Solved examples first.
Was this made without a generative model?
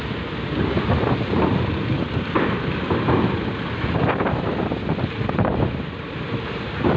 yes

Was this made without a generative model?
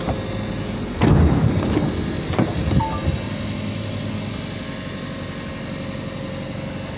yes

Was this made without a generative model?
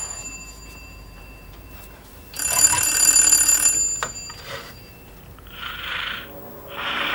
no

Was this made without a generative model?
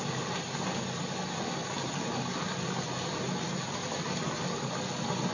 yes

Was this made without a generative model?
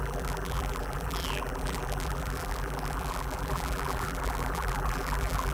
no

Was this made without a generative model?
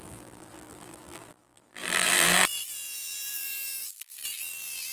no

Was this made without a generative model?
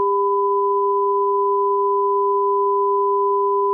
yes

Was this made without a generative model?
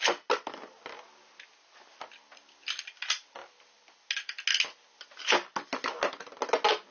yes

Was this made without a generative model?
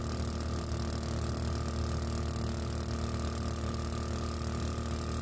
yes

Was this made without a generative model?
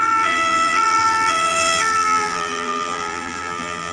no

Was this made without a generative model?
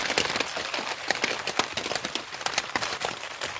no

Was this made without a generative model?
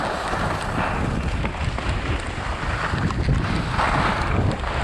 yes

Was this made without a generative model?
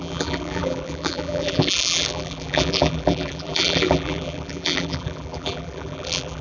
no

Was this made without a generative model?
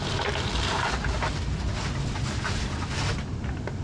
yes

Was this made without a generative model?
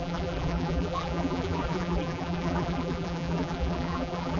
no